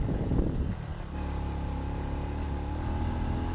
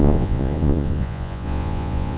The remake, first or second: second